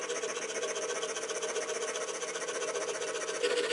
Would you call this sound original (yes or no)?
yes